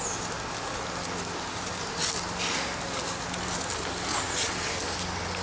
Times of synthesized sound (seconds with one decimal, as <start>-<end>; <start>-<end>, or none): 4.1-4.7